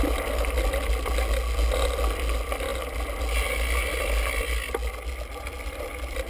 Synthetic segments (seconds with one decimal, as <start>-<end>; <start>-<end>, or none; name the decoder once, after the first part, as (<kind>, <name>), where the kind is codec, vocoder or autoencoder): none